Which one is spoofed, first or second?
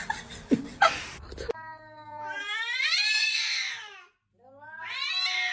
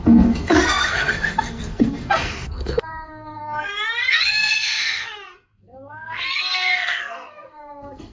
second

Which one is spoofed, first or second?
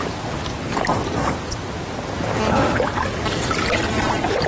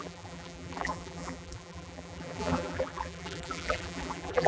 second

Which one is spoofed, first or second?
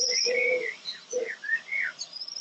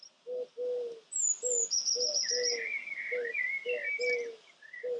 first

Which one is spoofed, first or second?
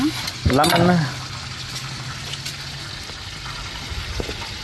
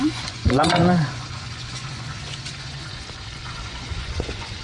second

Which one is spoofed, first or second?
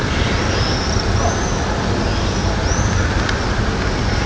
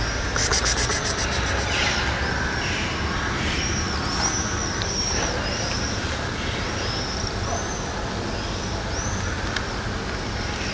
first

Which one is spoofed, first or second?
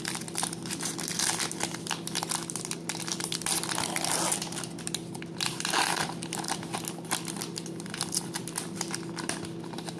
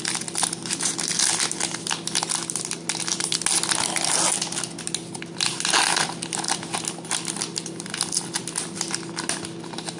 first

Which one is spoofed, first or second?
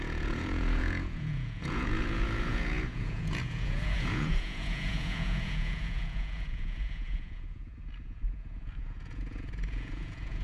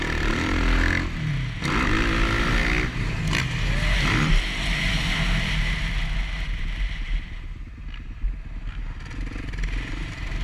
first